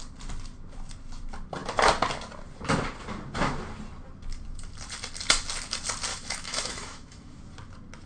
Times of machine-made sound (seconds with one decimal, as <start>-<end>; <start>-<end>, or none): 6.1-7.4